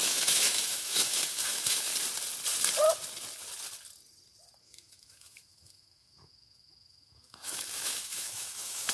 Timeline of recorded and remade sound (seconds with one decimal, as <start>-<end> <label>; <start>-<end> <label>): 0.0-1.9 remade; 1.9-4.6 recorded; 4.6-8.9 remade